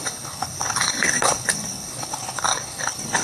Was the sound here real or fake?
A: fake